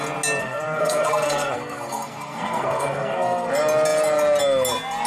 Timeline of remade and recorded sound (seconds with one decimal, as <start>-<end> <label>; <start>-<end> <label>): 0.0-0.4 recorded; 0.4-3.5 remade; 3.5-5.1 recorded